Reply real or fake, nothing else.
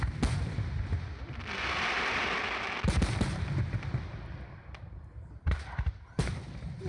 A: real